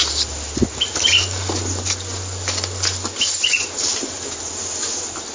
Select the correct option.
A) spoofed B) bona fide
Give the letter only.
B